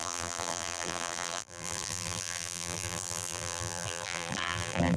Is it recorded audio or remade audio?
remade